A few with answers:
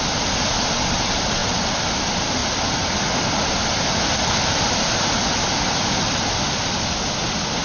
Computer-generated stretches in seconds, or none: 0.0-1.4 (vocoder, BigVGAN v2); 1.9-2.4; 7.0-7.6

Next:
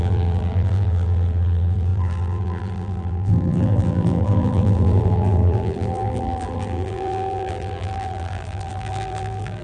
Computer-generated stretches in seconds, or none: 0.0-9.6 (vocoder, BigVGAN v2)

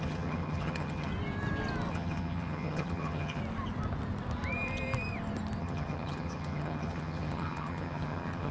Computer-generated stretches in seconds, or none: 0.0-1.1 (vocoder, HiFi-GAN); 1.9-3.4; 5.6-8.5

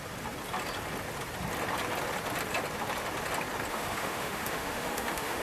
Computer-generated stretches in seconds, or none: 3.7-5.4 (autoencoder, DAC-VAE)

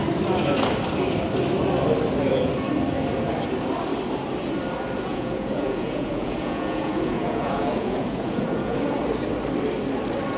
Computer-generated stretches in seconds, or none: 5.1-9.0 (vocoder, Vocos)